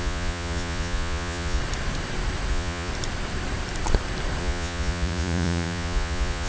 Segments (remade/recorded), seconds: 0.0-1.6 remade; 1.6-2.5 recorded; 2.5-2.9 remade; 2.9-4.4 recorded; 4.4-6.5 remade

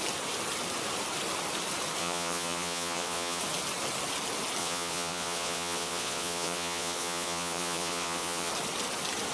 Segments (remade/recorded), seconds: 0.0-2.0 recorded; 2.0-3.4 remade; 3.4-4.6 recorded; 4.6-8.5 remade; 8.5-9.3 recorded

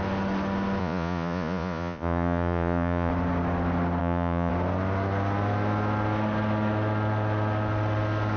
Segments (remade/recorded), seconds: 0.0-0.8 recorded; 0.8-3.1 remade; 3.1-4.0 recorded; 4.0-4.5 remade; 4.5-8.4 recorded

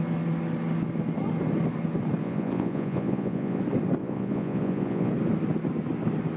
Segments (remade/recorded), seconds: 0.0-2.2 recorded; 2.2-3.6 remade; 3.6-4.0 recorded; 4.0-5.1 remade; 5.1-6.4 recorded

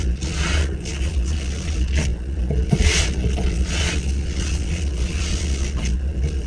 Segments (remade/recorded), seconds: 0.0-6.5 remade

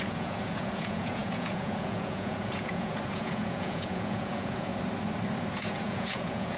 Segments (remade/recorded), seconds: 0.0-4.7 remade; 4.7-5.5 recorded; 5.5-6.6 remade

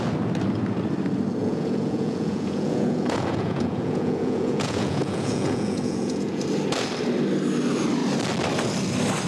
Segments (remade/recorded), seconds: 0.0-1.4 recorded; 1.4-6.4 remade; 6.4-9.3 recorded